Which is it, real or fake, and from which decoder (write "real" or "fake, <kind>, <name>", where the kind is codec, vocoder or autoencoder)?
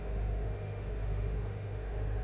fake, autoencoder, DAC-VAE